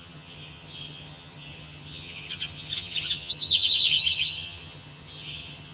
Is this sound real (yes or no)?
no